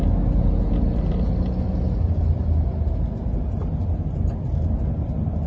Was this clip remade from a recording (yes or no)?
no